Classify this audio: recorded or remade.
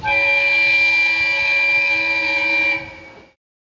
recorded